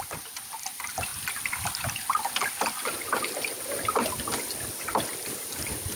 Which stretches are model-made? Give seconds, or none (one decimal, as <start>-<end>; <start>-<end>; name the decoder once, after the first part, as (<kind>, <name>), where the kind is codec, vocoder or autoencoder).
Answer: 0.0-6.0 (vocoder, BigVGAN v2)